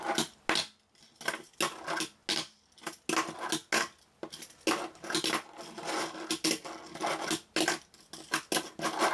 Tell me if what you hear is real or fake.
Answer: real